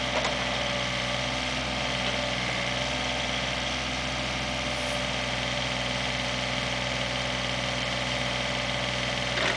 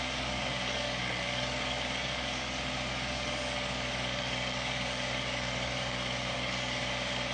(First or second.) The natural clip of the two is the first